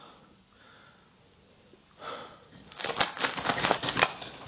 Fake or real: real